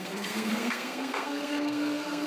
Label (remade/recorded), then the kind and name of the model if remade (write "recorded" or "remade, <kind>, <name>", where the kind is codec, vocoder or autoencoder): remade, codec, SNAC